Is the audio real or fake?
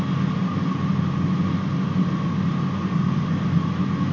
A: real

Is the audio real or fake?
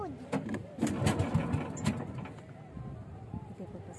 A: real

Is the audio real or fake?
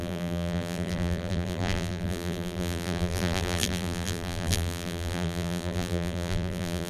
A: fake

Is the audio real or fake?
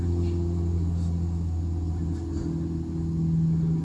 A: real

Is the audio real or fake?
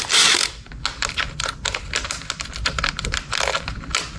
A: real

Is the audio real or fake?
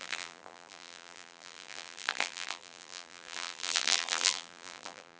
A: fake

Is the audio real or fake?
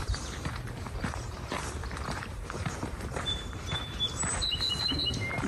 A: fake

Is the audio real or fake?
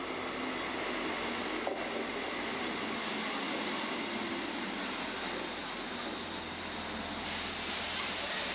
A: real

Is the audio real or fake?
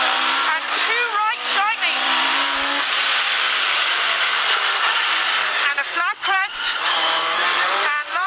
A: fake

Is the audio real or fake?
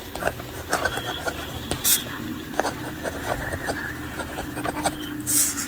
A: real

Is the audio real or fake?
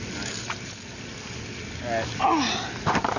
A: real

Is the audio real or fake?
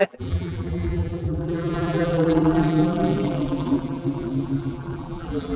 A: fake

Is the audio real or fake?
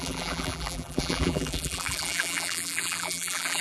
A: fake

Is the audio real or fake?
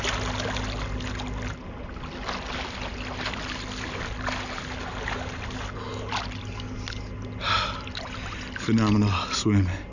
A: real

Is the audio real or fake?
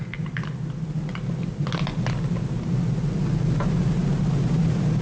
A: real